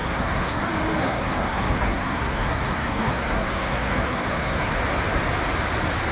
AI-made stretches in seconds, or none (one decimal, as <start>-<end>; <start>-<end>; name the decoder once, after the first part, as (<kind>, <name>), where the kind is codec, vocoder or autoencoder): 0.0-0.6 (codec, SNAC); 1.0-4.7